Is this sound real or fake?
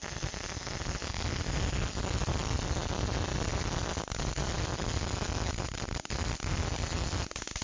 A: real